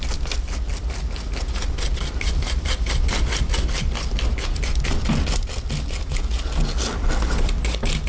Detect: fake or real real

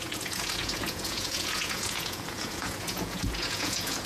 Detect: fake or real fake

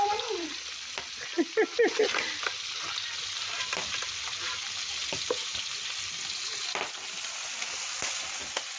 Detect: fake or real real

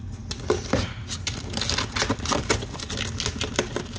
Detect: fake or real real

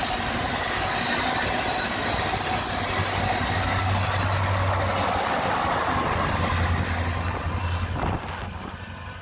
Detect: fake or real real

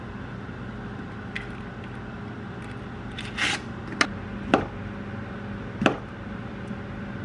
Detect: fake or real real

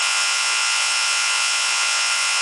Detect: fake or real fake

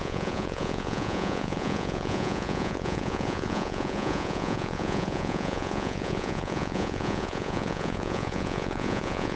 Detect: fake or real fake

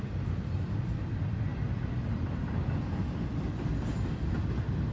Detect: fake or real real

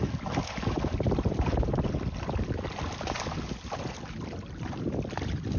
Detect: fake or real real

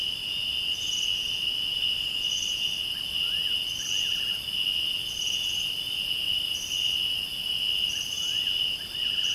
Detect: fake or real real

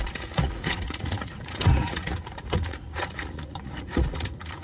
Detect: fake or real fake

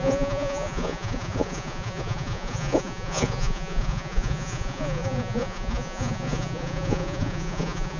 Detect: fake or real fake